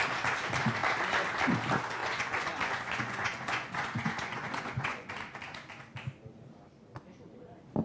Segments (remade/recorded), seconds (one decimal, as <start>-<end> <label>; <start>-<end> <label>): 0.0-2.0 recorded; 2.0-5.1 remade; 5.1-7.8 recorded